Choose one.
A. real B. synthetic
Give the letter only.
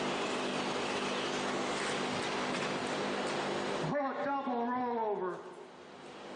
A